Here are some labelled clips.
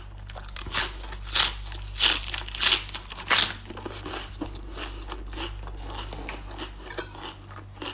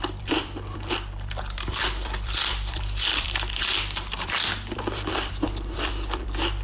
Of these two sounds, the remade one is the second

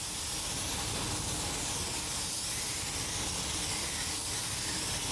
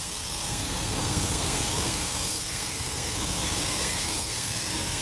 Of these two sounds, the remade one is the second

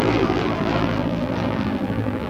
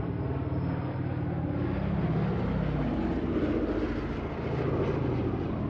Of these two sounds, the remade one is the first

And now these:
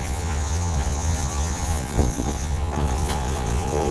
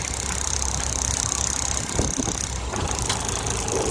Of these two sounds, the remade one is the first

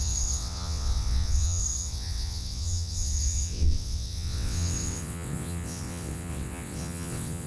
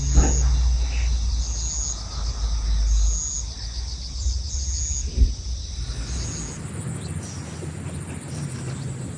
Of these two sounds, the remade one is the first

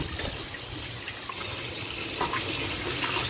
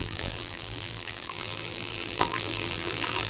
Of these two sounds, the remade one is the second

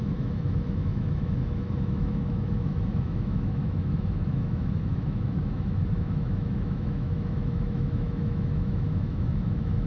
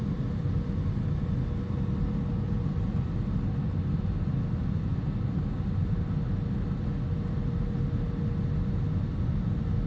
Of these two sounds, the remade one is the first